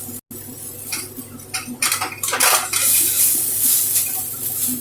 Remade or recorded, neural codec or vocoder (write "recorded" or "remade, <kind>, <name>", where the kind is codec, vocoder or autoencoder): recorded